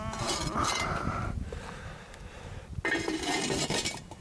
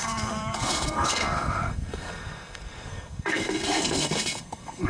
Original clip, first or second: first